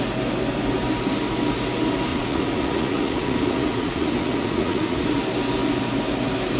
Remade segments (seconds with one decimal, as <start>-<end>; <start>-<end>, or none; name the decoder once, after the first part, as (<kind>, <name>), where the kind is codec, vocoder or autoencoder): 2.1-5.2 (vocoder, Vocos)